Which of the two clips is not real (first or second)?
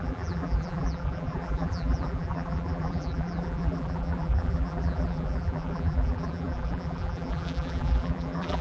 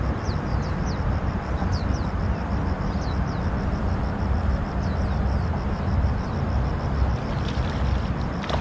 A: first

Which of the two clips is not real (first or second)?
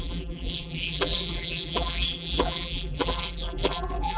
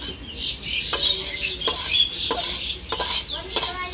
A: first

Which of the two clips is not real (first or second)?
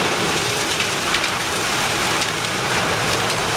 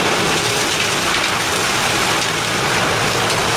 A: first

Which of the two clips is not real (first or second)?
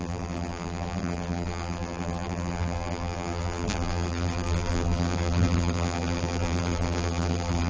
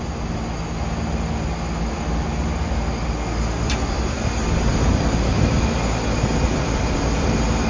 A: first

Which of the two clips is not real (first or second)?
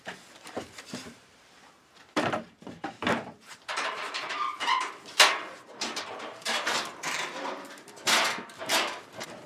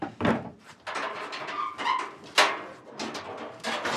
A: first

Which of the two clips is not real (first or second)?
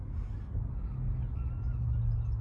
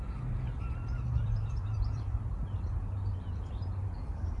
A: second